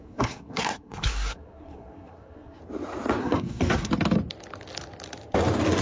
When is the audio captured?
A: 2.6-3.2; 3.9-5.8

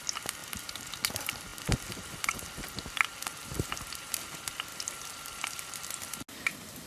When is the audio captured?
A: 0.0-0.4; 1.1-6.9